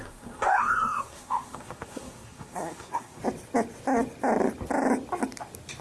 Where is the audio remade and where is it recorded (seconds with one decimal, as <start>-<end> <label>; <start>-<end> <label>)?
0.0-3.2 remade; 3.2-5.8 recorded